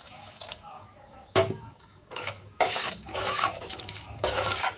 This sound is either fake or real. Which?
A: fake